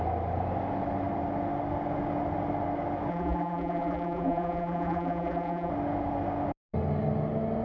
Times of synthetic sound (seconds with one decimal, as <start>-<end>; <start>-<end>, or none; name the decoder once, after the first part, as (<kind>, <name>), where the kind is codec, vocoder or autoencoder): 3.1-5.7 (vocoder, BigVGAN v2)